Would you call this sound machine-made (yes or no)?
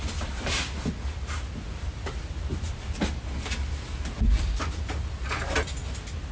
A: no